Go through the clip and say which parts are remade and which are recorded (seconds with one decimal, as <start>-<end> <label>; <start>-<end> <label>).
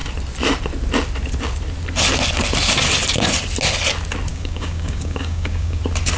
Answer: 0.0-4.3 recorded; 4.3-5.8 remade; 5.8-6.2 recorded